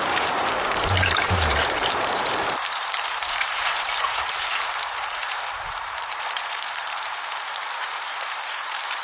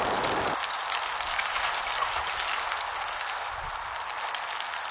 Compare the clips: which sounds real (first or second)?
second